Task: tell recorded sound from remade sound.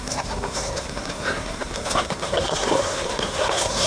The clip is remade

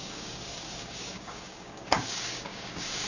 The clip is remade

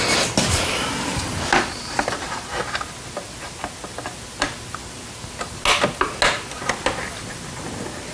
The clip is recorded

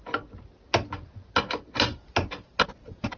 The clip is recorded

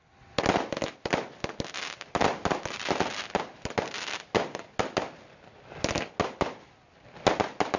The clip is recorded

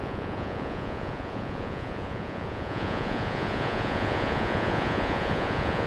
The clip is remade